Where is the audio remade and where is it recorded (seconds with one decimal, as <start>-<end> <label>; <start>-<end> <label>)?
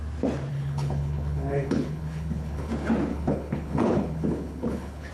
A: 0.0-0.5 recorded; 0.5-2.7 remade; 2.7-3.1 recorded; 3.1-5.1 remade